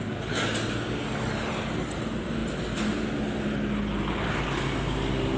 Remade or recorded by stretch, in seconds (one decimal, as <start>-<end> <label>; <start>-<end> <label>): 0.0-5.4 recorded